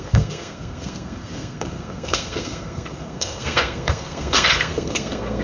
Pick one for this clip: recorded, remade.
remade